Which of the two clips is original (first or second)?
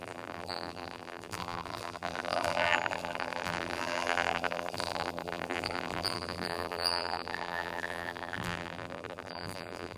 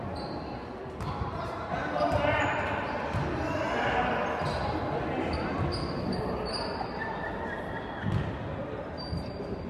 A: second